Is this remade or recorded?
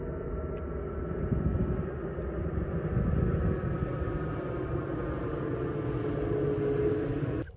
recorded